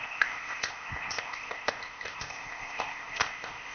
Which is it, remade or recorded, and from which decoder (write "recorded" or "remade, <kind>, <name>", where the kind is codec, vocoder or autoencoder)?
remade, codec, ZipCodec